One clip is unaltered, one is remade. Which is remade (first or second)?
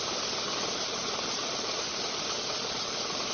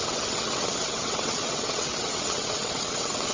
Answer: second